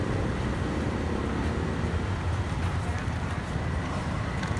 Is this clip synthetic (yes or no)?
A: no